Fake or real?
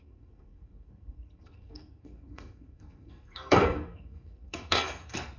fake